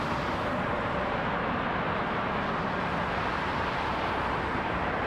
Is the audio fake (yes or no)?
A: yes